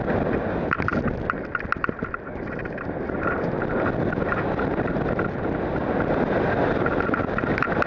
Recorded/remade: recorded